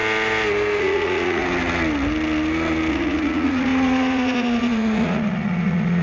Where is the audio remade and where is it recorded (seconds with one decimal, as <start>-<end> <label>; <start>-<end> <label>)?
0.0-0.8 recorded; 0.8-1.4 remade; 1.4-2.9 recorded; 2.9-6.0 remade